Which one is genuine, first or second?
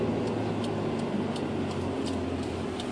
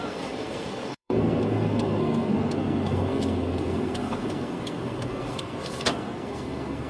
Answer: first